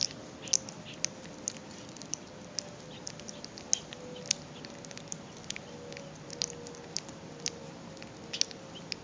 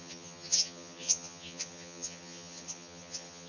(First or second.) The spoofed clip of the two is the second